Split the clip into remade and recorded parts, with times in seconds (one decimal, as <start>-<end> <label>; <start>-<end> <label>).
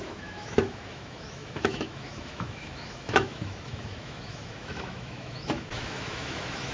0.0-6.7 remade